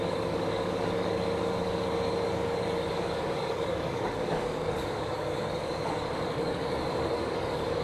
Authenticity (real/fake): fake